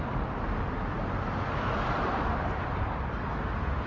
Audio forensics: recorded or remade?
recorded